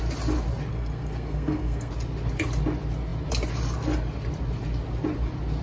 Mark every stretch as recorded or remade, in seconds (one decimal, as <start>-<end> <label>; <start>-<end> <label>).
0.0-0.7 recorded; 0.7-1.9 remade; 1.9-5.6 recorded